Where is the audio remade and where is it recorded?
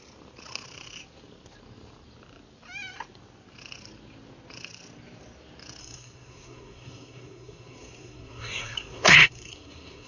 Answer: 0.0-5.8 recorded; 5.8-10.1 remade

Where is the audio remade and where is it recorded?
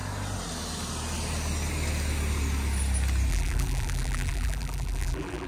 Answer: 0.0-3.3 recorded; 3.3-5.5 remade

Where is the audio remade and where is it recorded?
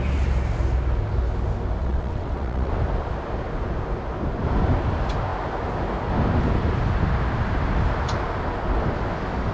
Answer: 0.0-1.8 recorded; 1.8-2.7 remade; 2.7-9.5 recorded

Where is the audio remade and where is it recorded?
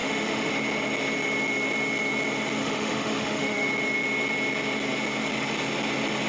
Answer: 0.0-0.5 remade; 0.5-2.6 recorded; 2.6-3.7 remade; 3.7-6.3 recorded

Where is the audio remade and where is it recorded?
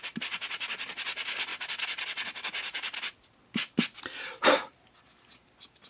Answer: 0.0-5.9 recorded